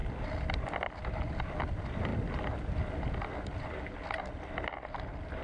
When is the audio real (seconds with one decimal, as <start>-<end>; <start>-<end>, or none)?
0.0-5.4